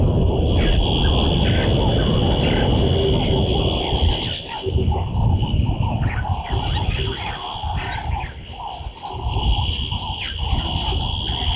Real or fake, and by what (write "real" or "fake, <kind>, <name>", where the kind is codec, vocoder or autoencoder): real